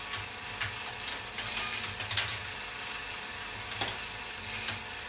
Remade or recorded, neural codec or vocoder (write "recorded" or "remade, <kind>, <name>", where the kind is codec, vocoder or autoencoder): recorded